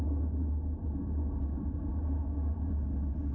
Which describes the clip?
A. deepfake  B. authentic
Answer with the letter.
B